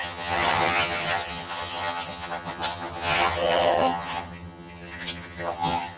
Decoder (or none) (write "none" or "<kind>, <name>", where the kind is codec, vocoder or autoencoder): vocoder, HiFi-GAN